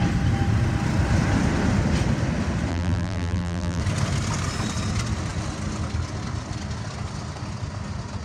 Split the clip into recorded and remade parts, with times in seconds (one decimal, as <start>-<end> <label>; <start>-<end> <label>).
0.0-2.7 recorded; 2.7-3.8 remade; 3.8-8.2 recorded